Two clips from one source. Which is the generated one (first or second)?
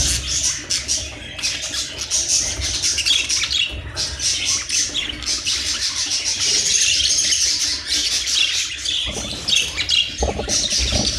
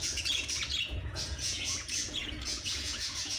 second